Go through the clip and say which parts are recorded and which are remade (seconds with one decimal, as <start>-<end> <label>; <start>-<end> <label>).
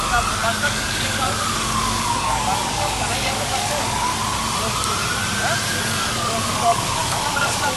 0.0-4.1 remade; 4.1-5.8 recorded; 5.8-7.8 remade